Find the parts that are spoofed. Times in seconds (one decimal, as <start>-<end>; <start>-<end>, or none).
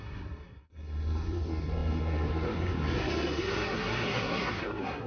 0.0-5.1